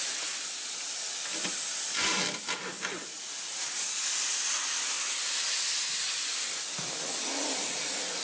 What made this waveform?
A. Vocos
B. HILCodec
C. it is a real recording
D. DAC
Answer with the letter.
C